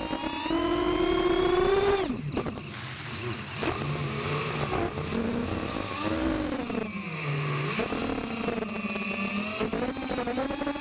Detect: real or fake real